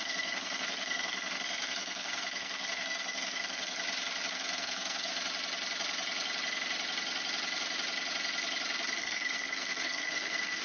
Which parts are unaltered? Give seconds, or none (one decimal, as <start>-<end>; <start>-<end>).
3.8-4.3; 5.1-9.0